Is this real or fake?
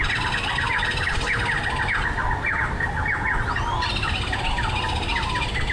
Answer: real